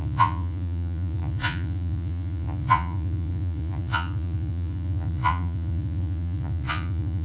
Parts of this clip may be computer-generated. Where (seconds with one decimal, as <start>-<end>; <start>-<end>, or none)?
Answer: 0.0-7.2